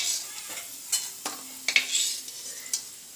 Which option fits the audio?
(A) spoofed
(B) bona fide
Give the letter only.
B